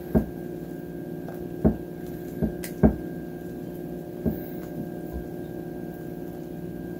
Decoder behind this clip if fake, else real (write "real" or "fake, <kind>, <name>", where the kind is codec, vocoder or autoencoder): real